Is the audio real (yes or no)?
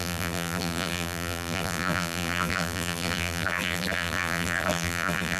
no